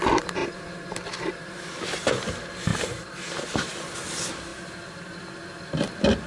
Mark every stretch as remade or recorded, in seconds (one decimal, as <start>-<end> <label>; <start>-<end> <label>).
0.0-0.4 recorded; 0.4-1.9 remade; 1.9-2.7 recorded; 2.7-3.8 remade; 3.8-4.5 recorded; 4.5-5.2 remade; 5.2-6.3 recorded